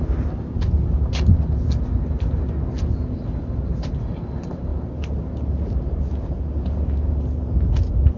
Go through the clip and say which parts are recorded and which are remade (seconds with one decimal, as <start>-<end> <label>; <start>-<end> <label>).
0.0-8.2 recorded